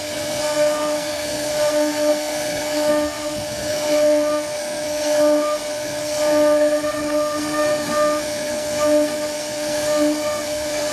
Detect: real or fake fake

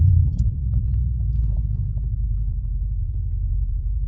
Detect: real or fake fake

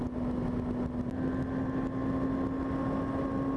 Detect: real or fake real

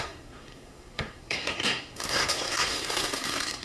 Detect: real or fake fake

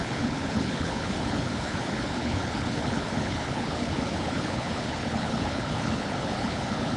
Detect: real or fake fake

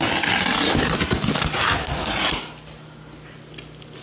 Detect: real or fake real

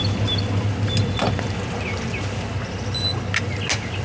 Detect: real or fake real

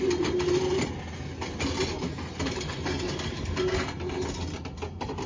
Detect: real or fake real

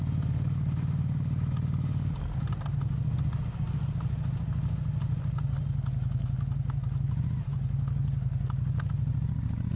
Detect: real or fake real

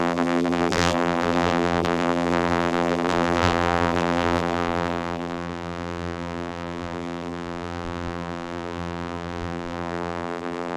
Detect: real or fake fake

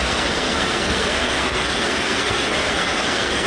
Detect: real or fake fake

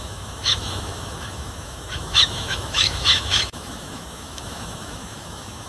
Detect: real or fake fake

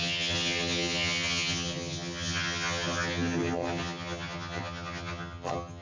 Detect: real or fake fake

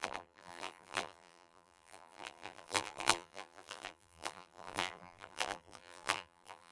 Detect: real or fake fake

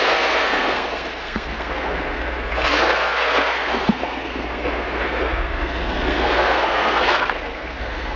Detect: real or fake fake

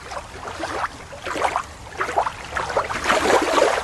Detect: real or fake real